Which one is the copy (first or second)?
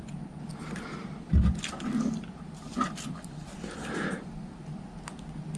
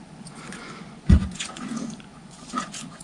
second